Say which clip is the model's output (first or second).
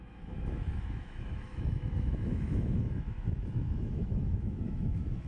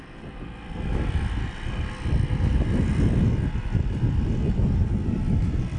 first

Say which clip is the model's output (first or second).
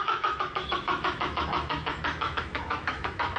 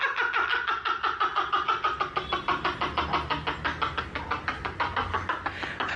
first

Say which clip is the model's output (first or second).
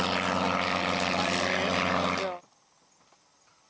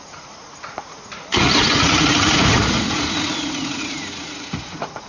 second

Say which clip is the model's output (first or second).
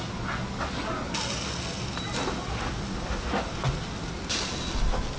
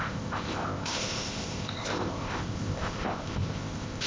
second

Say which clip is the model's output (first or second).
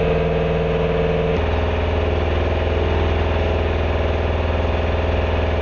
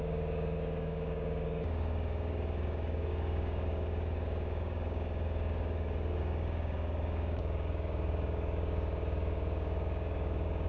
second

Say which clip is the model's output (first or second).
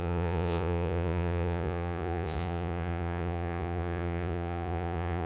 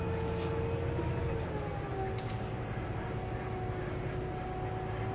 first